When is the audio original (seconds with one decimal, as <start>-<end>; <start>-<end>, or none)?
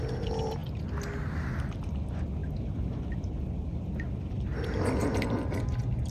0.0-6.1